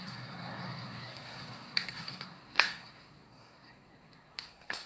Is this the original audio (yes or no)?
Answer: no